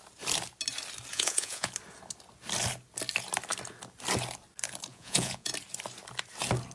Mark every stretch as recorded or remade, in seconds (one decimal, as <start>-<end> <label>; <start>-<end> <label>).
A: 0.0-1.1 recorded; 1.1-1.7 remade; 1.7-4.9 recorded; 4.9-5.5 remade; 5.5-6.7 recorded